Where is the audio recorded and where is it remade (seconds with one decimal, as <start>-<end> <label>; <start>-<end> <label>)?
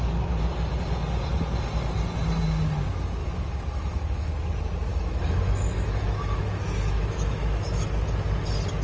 0.0-3.2 recorded; 3.2-4.3 remade; 4.3-4.9 recorded; 4.9-7.9 remade; 7.9-8.8 recorded